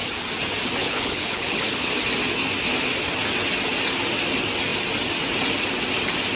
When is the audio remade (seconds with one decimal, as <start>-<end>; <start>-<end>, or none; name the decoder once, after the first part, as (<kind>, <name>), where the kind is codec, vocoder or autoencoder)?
0.8-1.9 (codec, HILCodec)